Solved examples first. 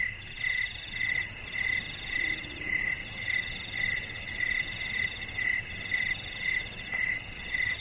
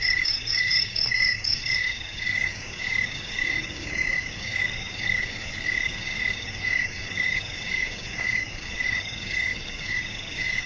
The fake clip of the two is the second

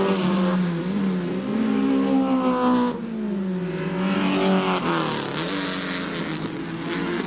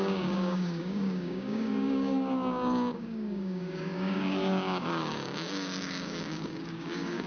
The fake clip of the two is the second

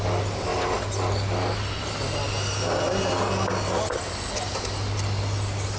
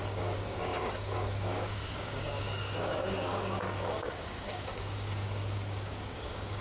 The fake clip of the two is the second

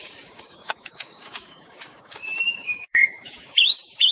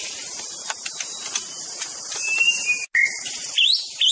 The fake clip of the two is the first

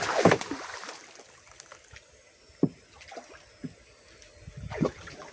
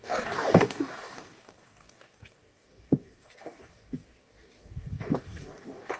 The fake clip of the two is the second